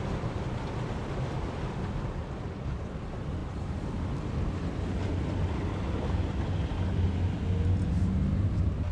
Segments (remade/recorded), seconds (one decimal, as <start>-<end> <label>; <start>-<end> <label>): 0.0-8.9 recorded